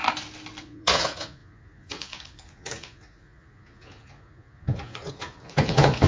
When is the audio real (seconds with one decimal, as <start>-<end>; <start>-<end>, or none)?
0.0-0.6